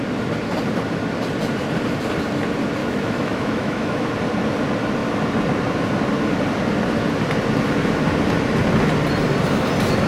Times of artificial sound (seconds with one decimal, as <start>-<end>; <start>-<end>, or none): 2.8-4.1